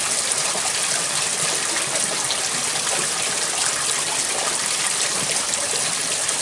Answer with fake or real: real